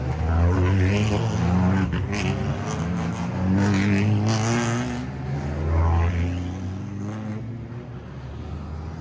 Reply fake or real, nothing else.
real